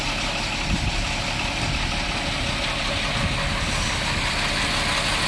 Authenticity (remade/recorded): recorded